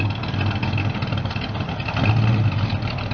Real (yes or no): yes